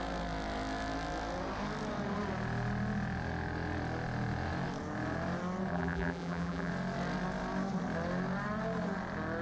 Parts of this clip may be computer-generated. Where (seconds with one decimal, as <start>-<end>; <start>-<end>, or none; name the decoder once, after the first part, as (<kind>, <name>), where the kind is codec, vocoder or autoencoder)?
5.7-6.7 (vocoder, BigVGAN v2)